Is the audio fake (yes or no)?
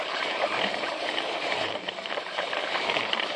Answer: yes